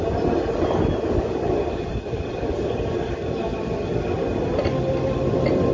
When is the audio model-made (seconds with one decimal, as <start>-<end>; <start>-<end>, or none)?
1.9-3.4